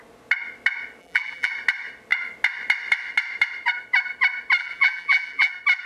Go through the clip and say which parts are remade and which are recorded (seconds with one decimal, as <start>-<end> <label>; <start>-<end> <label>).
0.0-1.0 recorded; 1.0-1.5 remade; 1.5-4.6 recorded; 4.6-5.5 remade; 5.5-5.9 recorded